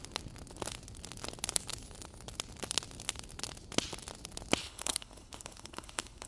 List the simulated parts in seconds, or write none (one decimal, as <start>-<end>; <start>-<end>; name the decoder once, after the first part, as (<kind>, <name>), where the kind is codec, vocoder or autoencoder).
4.6-6.3 (codec, HILCodec)